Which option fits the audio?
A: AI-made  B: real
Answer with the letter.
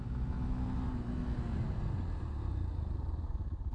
B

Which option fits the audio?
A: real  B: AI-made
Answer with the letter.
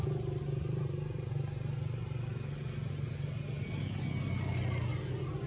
A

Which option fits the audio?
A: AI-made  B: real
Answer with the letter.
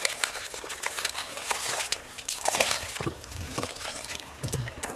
A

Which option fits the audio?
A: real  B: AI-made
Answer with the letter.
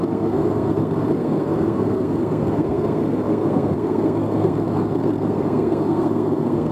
B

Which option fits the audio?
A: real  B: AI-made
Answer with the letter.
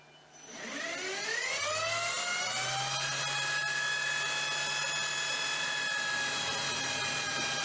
A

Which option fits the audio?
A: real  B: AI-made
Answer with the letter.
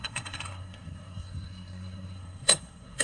B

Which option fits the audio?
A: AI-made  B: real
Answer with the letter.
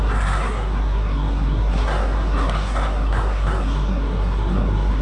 A